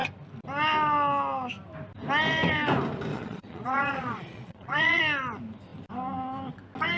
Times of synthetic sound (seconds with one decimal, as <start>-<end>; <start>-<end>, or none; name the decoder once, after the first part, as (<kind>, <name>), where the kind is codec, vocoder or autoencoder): 3.1-5.0 (vocoder, Vocos)